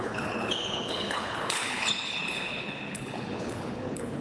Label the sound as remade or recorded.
remade